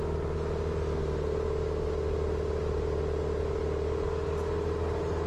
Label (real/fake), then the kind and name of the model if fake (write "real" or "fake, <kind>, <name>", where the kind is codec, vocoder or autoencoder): real